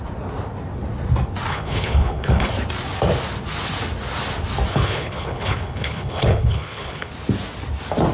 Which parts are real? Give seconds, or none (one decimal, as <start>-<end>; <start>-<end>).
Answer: 0.0-1.5; 2.5-4.7; 7.1-8.1